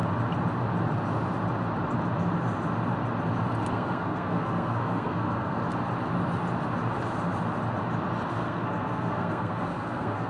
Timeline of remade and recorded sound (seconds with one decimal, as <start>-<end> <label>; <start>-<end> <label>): 0.0-3.7 recorded; 3.7-5.6 remade; 5.6-8.3 recorded; 8.3-10.3 remade